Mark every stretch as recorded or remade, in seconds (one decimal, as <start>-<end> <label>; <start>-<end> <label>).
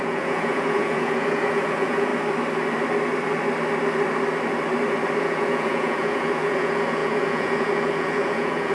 0.0-2.1 remade; 2.1-5.2 recorded; 5.2-8.7 remade